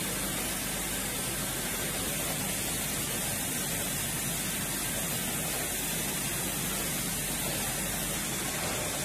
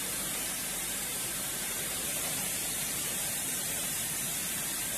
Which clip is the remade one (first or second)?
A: second